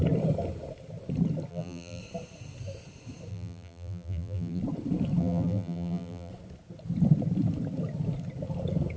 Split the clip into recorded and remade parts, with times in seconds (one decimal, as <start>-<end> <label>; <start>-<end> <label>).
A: 0.0-1.5 recorded; 1.5-2.0 remade; 2.0-3.3 recorded; 3.3-4.6 remade; 4.6-5.2 recorded; 5.2-6.3 remade; 6.3-9.0 recorded